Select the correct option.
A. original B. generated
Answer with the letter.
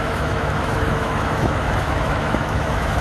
B